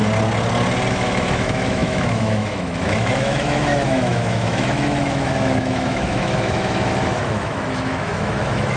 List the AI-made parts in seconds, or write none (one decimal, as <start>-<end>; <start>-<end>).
0.9-8.8